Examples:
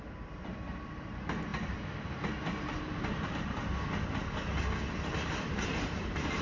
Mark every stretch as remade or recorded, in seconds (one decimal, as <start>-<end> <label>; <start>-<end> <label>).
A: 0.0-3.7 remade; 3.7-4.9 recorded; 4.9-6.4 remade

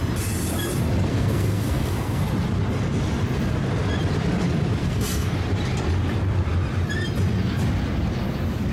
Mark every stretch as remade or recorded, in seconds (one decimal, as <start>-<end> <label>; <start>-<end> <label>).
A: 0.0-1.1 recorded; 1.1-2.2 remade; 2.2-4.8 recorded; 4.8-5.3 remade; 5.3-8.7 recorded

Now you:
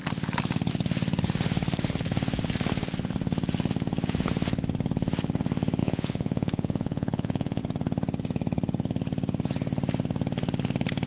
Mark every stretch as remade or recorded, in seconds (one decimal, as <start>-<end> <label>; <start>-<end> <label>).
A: 0.0-5.8 recorded; 5.8-7.6 remade; 7.6-11.1 recorded

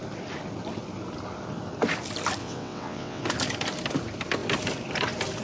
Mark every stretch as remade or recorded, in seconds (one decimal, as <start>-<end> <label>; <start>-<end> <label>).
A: 0.0-2.4 recorded; 2.4-3.2 remade; 3.2-5.4 recorded

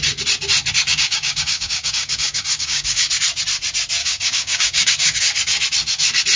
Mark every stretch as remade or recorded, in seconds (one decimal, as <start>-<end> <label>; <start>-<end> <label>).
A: 0.0-0.9 recorded; 0.9-3.1 remade; 3.1-4.0 recorded; 4.0-5.2 remade; 5.2-6.4 recorded

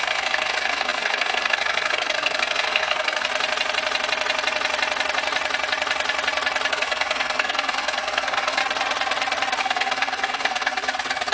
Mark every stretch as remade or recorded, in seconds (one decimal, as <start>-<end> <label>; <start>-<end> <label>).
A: 0.0-3.3 remade; 3.3-6.7 recorded; 6.7-8.6 remade; 8.6-9.6 recorded; 9.6-11.3 remade

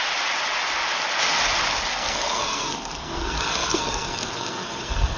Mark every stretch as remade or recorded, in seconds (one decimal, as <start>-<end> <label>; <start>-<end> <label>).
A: 0.0-1.9 recorded; 1.9-5.2 remade

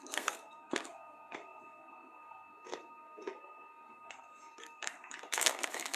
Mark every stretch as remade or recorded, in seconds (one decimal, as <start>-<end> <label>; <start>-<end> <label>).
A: 0.0-6.0 remade